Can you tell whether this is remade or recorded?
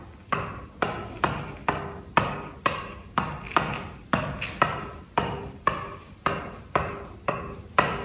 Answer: recorded